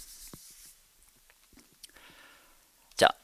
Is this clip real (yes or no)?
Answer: no